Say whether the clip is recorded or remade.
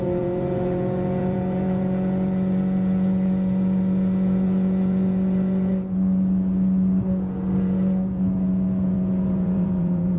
remade